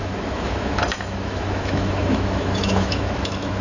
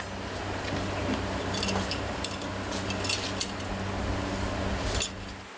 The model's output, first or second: first